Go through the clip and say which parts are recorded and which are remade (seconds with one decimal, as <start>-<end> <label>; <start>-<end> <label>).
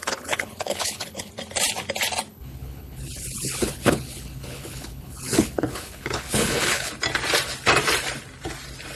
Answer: 0.0-1.3 remade; 1.3-2.3 recorded; 2.3-6.9 remade; 6.9-9.0 recorded